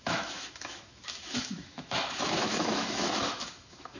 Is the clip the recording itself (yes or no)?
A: no